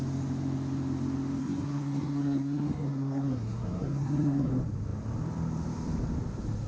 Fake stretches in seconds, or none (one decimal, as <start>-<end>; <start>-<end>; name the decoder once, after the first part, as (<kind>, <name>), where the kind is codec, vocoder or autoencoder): 1.4-4.5 (codec, SNAC)